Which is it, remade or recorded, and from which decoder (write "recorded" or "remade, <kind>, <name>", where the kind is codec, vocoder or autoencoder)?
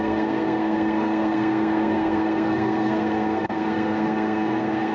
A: remade, codec, SNAC